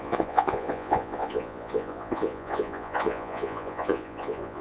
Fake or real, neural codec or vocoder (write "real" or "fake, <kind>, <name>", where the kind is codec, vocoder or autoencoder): fake, vocoder, Vocos